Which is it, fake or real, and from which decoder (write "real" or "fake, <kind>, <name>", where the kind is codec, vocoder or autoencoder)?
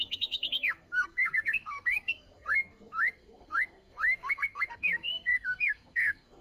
fake, codec, SNAC